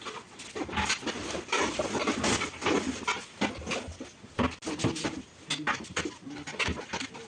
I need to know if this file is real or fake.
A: real